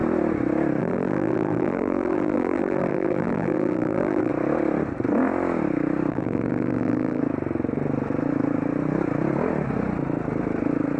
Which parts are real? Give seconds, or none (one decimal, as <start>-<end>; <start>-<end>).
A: 0.0-0.8; 4.3-6.1; 7.2-11.0